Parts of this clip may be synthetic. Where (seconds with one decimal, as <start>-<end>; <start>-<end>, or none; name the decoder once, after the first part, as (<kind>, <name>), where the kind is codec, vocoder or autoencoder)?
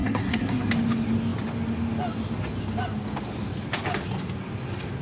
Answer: 0.0-0.7 (codec, SNAC)